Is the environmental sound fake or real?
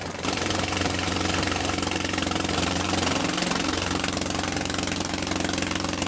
fake